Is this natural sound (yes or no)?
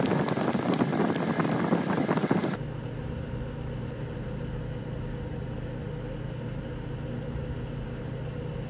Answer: yes